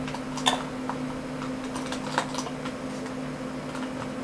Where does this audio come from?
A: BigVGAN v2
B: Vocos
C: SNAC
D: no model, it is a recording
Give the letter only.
D